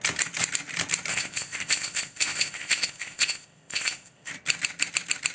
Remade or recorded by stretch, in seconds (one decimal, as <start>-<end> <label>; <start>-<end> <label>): 0.0-1.1 recorded; 1.1-4.3 remade; 4.3-5.3 recorded